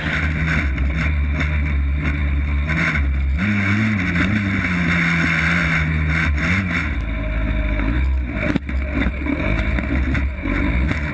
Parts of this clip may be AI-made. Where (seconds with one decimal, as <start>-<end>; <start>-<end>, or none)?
none